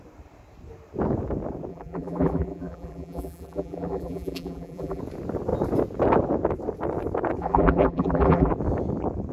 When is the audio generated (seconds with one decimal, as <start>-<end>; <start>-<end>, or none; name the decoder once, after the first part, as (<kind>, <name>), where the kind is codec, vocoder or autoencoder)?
1.7-5.0 (vocoder, BigVGAN v2); 7.4-8.5

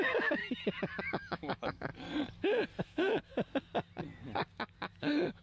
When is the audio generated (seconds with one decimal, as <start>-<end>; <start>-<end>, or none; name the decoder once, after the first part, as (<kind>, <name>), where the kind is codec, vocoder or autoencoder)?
0.0-0.4 (autoencoder, DAC-VAE); 1.0-1.9; 2.8-3.3; 4.9-5.4

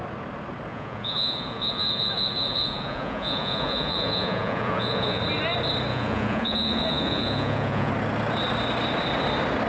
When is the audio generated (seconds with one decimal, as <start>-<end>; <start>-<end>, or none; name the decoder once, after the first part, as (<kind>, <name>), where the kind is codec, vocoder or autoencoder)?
0.7-5.2 (vocoder, Vocos); 5.9-7.9

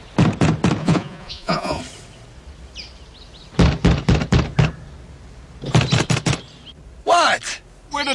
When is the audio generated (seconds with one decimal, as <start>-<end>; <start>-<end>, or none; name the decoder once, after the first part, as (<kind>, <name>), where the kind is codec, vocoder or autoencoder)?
0.8-1.8 (vocoder, Vocos)

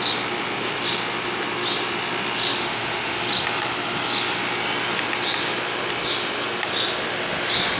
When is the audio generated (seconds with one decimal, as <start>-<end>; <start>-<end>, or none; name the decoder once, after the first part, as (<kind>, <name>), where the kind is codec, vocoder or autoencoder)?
2.5-3.2 (autoencoder, DAC-VAE)

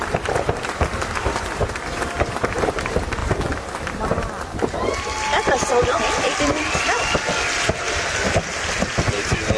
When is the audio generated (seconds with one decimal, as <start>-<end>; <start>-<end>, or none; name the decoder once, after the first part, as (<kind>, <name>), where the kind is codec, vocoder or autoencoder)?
none